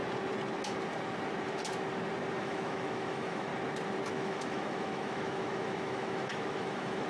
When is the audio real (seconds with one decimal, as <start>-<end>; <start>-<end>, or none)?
0.0-2.4; 3.5-4.1

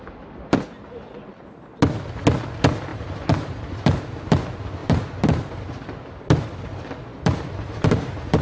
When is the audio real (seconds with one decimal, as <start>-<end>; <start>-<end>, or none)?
0.0-2.9; 4.0-4.8; 5.6-7.1

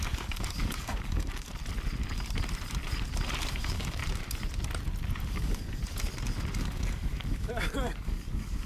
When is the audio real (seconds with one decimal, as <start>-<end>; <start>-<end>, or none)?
1.5-3.5; 4.0-5.2; 5.8-6.5

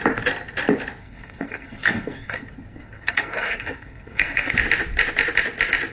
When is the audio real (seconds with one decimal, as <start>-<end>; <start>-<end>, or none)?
0.0-1.0; 4.5-5.9

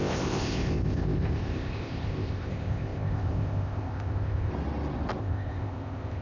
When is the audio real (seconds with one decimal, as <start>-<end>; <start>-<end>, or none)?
4.5-5.2